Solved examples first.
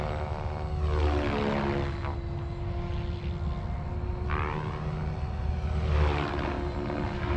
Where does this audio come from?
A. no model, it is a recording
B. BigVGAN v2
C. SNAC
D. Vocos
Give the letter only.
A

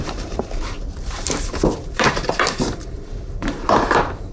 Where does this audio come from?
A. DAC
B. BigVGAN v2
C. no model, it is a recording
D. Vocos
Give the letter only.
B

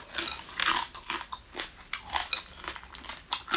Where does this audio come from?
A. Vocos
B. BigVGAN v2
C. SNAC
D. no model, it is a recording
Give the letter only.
D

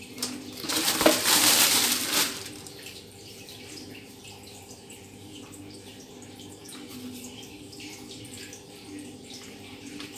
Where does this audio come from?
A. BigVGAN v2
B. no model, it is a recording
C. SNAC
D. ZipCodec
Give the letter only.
A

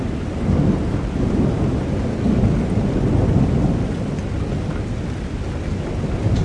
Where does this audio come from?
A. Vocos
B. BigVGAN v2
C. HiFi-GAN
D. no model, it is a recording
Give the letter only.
D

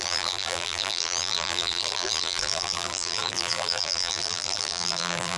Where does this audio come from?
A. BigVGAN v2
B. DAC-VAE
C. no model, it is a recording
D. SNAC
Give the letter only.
A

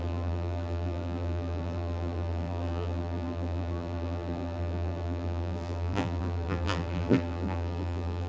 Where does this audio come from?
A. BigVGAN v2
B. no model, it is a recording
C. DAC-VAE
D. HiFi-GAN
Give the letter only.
A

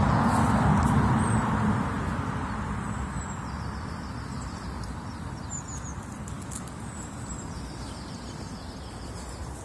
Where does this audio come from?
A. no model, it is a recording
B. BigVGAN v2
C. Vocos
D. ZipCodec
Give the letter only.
A